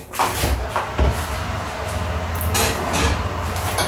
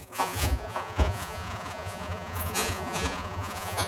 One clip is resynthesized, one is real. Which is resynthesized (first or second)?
second